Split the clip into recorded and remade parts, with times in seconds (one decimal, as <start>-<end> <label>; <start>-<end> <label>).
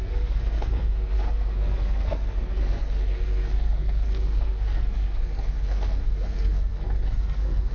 0.0-7.7 remade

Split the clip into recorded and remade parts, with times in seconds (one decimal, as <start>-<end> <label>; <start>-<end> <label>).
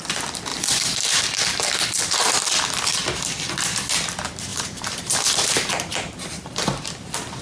0.0-0.5 recorded; 0.5-1.7 remade; 1.7-4.5 recorded; 4.5-6.9 remade; 6.9-7.4 recorded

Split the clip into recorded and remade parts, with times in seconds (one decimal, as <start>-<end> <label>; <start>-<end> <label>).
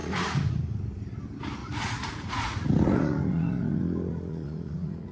0.0-0.6 remade; 0.6-1.6 recorded; 1.6-5.1 remade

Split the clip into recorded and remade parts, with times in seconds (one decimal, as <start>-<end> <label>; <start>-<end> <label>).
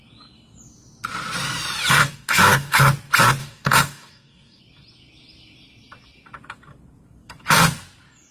0.0-2.0 recorded; 2.0-2.8 remade; 2.8-3.4 recorded; 3.4-4.6 remade; 4.6-8.3 recorded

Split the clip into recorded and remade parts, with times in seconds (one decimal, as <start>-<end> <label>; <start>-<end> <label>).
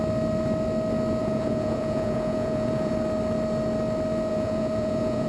0.0-1.2 recorded; 1.2-2.9 remade; 2.9-4.3 recorded; 4.3-5.3 remade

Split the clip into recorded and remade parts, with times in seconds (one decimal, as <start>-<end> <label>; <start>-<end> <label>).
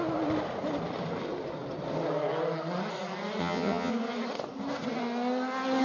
0.0-3.4 recorded; 3.4-3.9 remade; 3.9-5.8 recorded